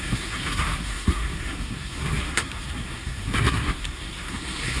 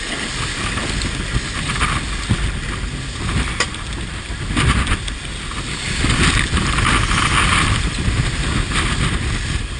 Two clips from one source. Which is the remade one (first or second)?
first